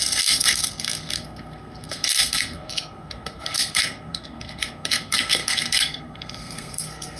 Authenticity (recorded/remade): remade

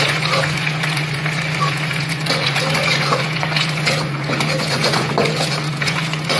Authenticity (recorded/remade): remade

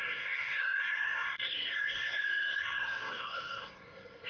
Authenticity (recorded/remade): remade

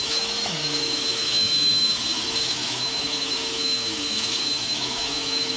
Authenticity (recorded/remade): remade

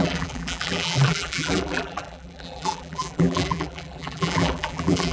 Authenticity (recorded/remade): remade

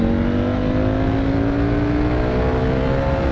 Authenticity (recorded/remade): recorded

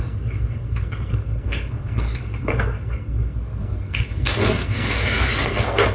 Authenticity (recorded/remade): remade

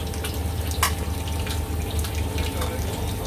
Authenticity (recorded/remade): recorded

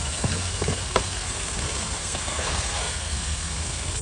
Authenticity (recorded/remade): remade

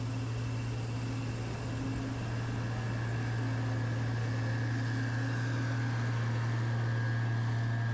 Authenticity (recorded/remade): recorded